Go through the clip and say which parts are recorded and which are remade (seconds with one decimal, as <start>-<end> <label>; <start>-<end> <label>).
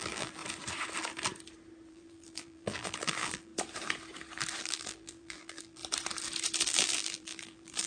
0.0-0.4 remade; 0.4-1.9 recorded; 1.9-3.5 remade; 3.5-4.6 recorded; 4.6-5.8 remade; 5.8-6.6 recorded; 6.6-7.9 remade